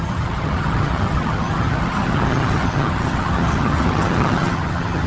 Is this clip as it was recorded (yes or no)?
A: no